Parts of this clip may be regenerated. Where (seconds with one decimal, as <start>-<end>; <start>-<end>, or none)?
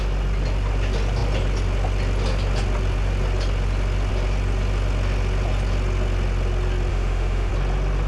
6.9-7.5